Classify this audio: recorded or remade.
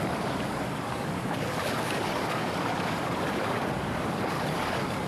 remade